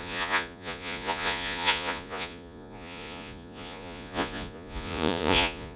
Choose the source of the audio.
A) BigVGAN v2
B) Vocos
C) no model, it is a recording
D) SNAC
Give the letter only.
B